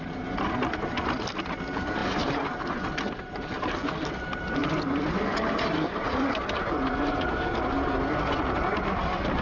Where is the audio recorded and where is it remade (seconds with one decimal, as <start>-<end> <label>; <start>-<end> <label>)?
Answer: 0.0-9.4 recorded